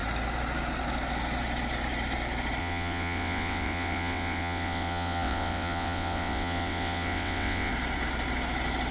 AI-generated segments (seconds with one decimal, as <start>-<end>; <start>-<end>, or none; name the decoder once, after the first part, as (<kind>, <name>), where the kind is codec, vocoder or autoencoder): 2.6-7.7 (vocoder, WaveNeXt)